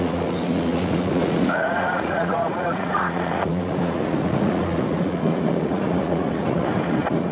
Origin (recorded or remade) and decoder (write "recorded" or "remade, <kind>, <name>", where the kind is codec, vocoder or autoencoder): remade, vocoder, Vocos